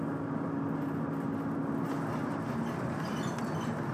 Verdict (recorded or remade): recorded